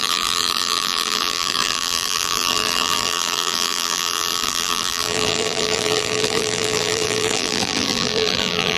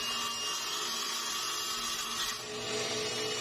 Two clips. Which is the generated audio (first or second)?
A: first